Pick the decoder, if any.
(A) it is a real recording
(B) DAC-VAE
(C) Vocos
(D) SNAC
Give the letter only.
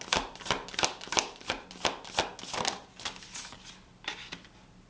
A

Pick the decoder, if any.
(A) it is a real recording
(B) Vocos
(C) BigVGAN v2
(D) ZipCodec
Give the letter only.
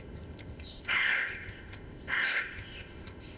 D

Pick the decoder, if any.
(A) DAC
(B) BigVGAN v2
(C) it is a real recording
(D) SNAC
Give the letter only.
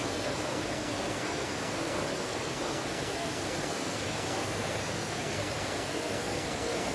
D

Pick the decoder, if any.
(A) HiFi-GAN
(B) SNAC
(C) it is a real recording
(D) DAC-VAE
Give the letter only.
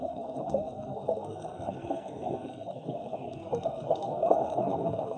B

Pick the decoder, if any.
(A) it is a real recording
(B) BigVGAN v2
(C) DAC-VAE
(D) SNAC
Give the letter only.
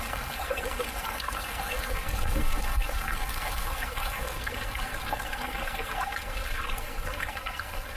D